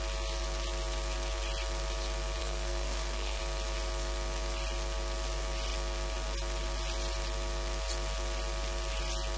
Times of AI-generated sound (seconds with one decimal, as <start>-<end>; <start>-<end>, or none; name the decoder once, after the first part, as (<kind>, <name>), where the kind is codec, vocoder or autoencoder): 2.4-3.4 (codec, SNAC)